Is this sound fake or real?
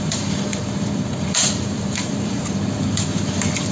fake